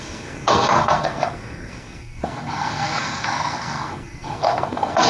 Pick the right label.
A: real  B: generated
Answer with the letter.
B